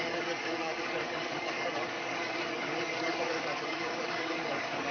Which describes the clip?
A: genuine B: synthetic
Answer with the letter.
B